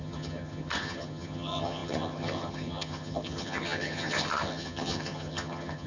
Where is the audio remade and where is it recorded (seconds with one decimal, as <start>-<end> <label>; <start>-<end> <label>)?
0.0-5.9 remade